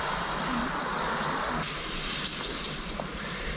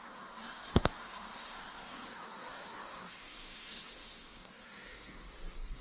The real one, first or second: first